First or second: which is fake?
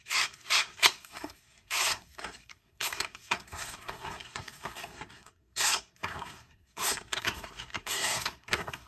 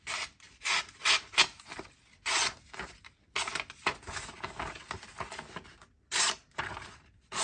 first